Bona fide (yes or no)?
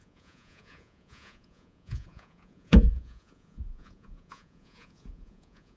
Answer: no